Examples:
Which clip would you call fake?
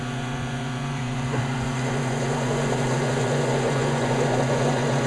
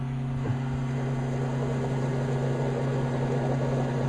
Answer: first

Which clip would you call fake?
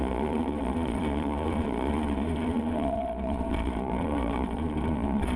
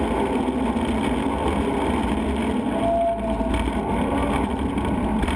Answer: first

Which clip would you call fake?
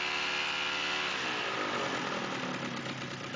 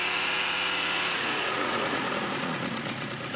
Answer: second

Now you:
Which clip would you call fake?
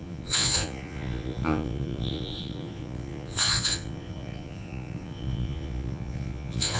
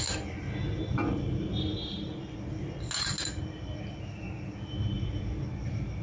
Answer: first